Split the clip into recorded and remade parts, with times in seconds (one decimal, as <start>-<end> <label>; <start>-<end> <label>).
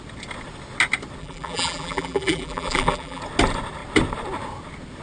0.0-1.2 recorded; 1.2-3.2 remade; 3.2-5.0 recorded